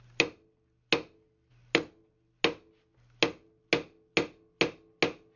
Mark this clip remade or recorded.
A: recorded